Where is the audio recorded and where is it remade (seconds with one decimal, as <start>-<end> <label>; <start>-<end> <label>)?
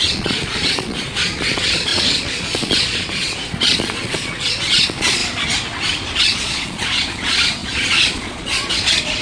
0.0-5.2 remade; 5.2-6.2 recorded; 6.2-9.2 remade